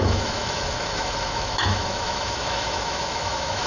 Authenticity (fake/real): fake